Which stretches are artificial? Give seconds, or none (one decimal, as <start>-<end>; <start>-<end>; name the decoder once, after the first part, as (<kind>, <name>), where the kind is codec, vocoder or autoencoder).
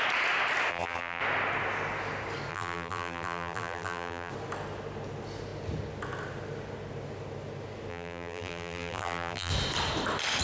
0.7-1.2 (vocoder, BigVGAN v2); 2.5-4.3; 7.9-9.5